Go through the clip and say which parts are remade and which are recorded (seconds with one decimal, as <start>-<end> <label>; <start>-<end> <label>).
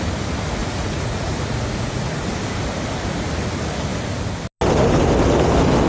0.0-0.6 recorded; 0.6-2.3 remade; 2.3-5.9 recorded